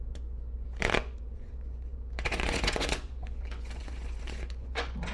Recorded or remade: remade